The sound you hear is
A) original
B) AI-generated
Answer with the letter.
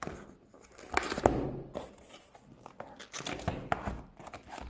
A